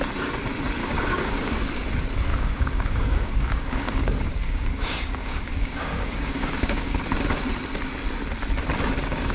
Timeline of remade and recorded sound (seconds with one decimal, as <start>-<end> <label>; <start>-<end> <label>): 0.0-0.8 recorded; 0.8-1.6 remade; 1.6-2.3 recorded; 2.3-7.0 remade; 7.0-9.3 recorded